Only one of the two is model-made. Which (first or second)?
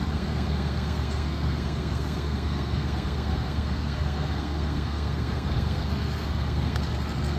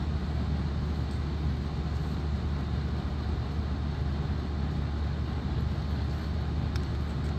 first